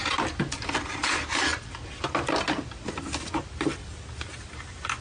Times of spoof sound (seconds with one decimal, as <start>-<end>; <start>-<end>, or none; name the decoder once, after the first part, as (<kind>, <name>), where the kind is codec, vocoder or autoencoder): none